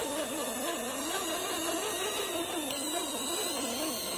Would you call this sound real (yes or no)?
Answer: yes